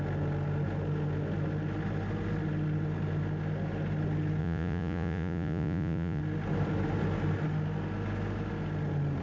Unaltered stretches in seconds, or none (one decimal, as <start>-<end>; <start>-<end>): 0.0-4.4; 6.2-9.2